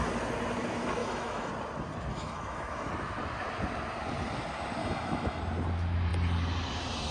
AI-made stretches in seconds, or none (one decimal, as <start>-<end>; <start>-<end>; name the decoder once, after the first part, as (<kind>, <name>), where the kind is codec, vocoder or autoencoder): 1.0-1.5 (autoencoder, DAC-VAE); 2.1-2.9; 4.8-5.4